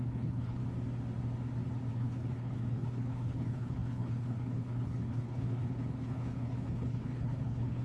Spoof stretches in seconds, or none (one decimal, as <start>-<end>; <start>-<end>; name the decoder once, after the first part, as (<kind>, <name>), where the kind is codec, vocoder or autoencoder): 0.0-0.6 (codec, HILCodec); 1.9-7.8